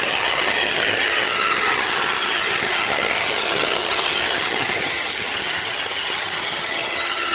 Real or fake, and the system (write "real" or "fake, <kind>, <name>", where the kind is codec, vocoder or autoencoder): fake, vocoder, HiFi-GAN